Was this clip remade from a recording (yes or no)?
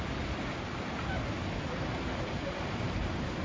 no